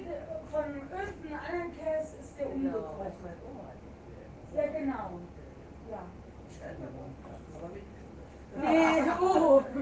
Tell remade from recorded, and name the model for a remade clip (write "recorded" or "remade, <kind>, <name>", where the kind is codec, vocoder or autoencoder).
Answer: recorded